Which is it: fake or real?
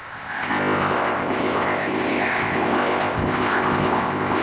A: fake